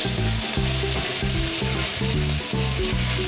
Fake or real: real